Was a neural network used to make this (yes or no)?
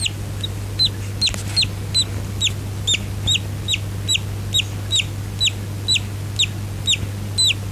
no